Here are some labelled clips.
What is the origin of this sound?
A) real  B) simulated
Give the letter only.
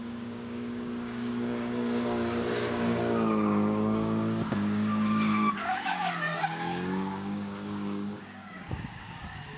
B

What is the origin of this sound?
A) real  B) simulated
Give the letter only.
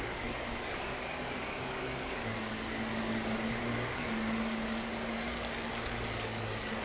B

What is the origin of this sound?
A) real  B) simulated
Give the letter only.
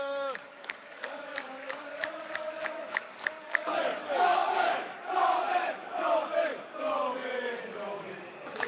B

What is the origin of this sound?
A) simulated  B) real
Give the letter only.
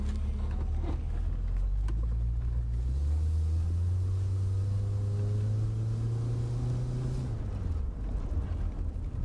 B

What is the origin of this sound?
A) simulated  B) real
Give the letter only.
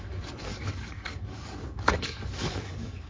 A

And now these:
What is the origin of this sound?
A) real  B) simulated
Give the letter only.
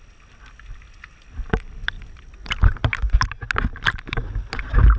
A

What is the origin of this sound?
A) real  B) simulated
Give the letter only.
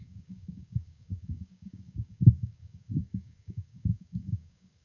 B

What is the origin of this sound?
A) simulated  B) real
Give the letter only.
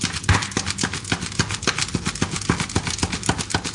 B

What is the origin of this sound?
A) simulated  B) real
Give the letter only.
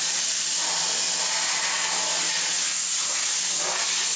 B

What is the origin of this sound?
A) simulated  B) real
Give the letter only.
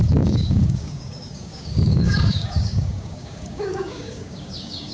A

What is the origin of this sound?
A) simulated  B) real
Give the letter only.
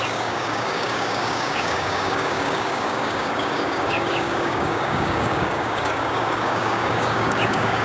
A